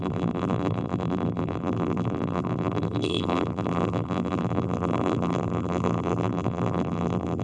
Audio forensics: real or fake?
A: fake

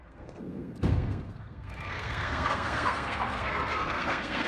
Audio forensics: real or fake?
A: fake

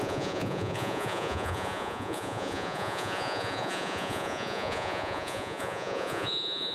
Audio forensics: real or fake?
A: fake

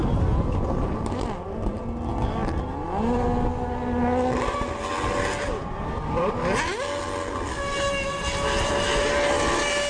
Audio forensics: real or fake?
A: real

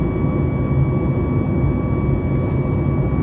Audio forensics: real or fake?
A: real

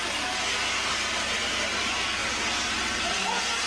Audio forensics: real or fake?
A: real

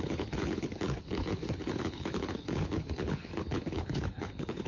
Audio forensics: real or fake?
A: fake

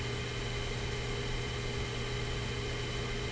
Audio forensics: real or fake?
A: real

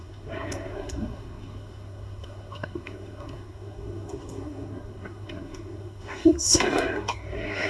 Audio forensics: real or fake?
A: fake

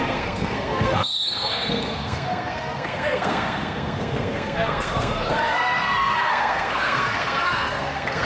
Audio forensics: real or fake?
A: fake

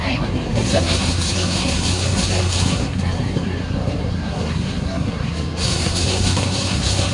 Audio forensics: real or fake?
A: fake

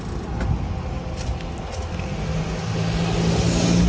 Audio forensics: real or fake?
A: real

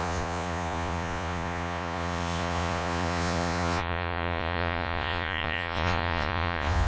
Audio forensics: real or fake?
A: fake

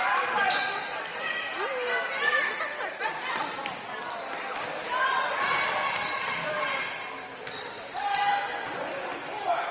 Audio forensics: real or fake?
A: fake